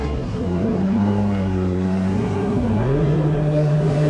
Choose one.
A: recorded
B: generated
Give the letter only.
B